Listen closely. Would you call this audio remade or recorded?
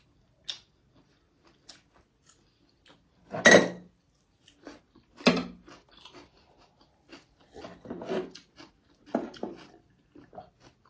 recorded